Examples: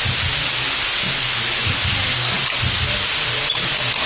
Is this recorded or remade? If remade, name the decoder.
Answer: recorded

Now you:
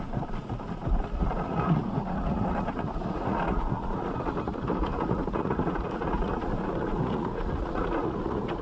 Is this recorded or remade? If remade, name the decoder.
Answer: remade, vocoder, Vocos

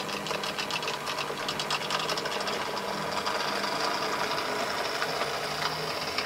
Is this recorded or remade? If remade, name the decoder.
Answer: recorded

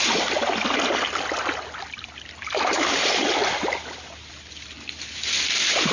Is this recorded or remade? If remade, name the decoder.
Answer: recorded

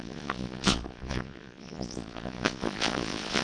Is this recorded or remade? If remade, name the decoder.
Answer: remade, vocoder, Vocos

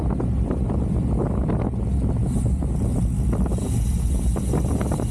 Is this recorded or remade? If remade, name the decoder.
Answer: recorded